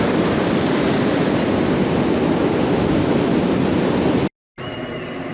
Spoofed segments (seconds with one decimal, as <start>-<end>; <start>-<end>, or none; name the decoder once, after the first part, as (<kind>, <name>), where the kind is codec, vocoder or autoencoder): none